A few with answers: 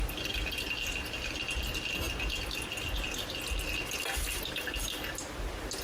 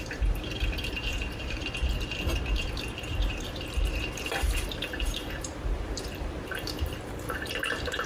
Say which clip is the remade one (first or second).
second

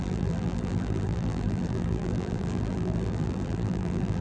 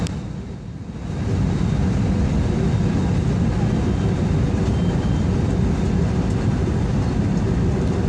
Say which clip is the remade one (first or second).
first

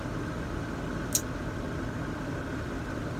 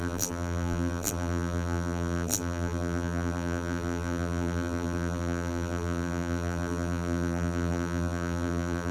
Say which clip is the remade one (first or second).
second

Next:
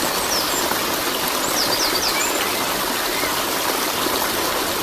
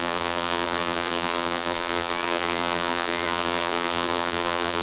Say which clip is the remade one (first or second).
second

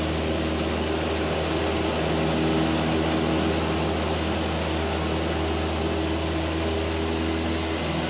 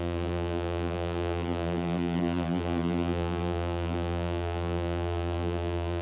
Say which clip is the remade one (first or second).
second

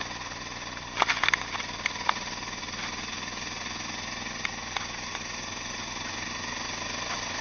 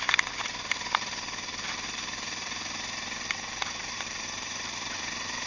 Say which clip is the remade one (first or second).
second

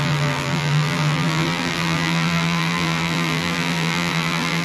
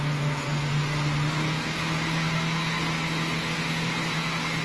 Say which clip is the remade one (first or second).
first